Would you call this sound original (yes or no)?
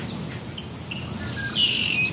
yes